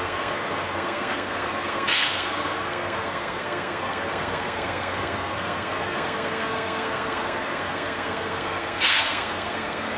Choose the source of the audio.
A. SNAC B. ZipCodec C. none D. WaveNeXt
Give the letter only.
A